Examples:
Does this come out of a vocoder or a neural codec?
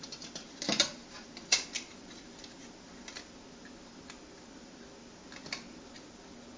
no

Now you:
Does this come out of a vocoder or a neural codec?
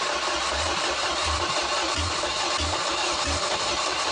yes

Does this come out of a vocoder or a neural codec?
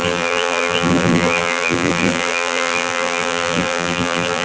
yes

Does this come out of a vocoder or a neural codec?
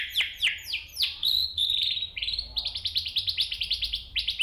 yes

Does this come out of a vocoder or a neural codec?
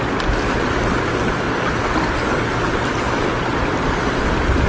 no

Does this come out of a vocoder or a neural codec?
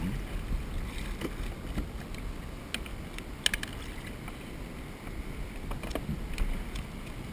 no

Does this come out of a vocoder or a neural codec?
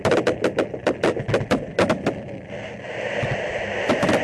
no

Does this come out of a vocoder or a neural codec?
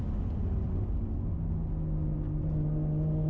no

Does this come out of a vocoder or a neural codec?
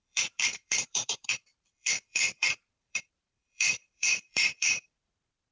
yes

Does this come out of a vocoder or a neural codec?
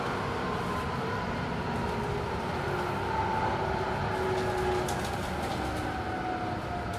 no